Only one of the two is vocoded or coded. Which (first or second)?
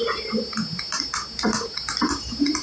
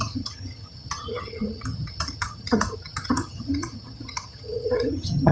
second